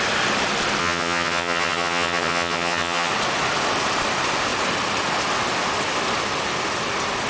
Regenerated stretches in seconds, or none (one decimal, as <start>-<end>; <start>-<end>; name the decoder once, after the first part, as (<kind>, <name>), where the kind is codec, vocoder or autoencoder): 0.8-3.1 (vocoder, HiFi-GAN)